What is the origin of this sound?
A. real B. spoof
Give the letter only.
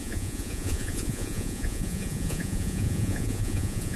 B